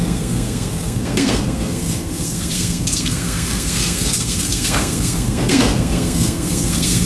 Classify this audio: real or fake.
fake